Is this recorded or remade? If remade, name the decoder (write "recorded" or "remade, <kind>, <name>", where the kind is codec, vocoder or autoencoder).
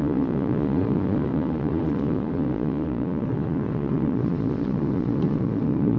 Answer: remade, vocoder, Vocos